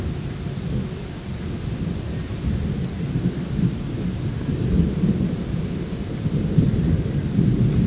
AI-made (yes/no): no